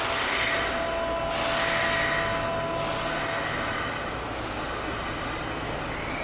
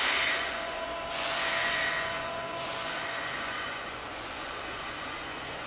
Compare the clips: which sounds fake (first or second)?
second